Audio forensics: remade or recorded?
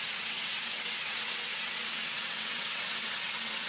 remade